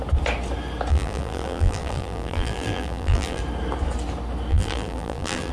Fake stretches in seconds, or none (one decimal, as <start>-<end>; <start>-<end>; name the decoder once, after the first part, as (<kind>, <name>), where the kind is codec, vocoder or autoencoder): 0.9-3.4 (vocoder, BigVGAN v2); 4.5-5.5